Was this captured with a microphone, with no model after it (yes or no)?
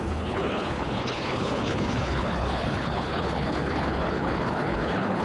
no